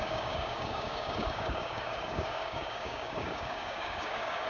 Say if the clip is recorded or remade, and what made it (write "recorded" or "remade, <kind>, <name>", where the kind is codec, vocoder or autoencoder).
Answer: remade, codec, DAC